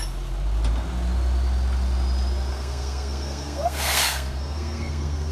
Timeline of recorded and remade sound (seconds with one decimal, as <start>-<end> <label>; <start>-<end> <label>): 0.0-2.5 recorded; 2.5-5.3 remade

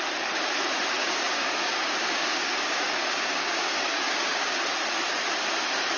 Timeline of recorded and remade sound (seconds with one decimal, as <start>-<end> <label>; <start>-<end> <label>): 0.0-1.0 recorded; 1.0-4.6 remade; 4.6-6.0 recorded

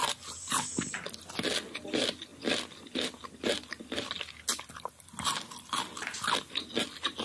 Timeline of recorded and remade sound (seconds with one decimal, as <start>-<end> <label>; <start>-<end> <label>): 0.0-7.2 recorded

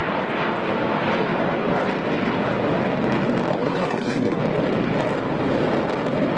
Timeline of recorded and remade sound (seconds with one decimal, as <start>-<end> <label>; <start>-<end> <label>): 0.0-3.5 recorded; 3.5-4.4 remade; 4.4-6.4 recorded

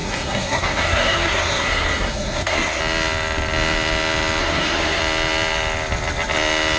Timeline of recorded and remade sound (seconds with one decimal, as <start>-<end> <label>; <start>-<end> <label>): 0.0-2.8 remade; 2.8-4.4 recorded; 4.4-5.0 remade; 5.0-6.8 recorded

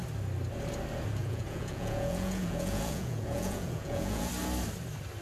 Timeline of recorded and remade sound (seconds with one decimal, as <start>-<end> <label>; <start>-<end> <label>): 0.0-1.2 recorded; 1.2-4.3 remade; 4.3-5.2 recorded

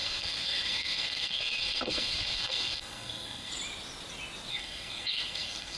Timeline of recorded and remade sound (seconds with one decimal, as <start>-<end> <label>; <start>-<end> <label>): 0.0-3.5 remade; 3.5-4.5 recorded; 4.5-5.8 remade